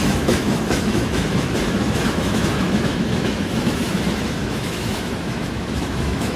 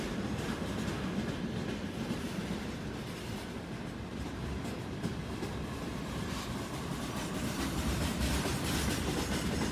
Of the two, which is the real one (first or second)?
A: second